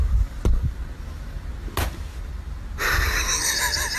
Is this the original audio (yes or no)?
yes